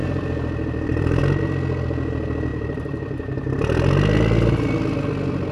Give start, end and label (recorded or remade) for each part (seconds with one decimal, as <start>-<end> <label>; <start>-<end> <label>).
0.0-1.2 remade; 1.2-2.5 recorded; 2.5-3.5 remade; 3.5-5.5 recorded